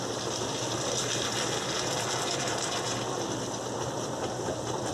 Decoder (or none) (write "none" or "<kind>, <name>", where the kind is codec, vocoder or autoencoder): none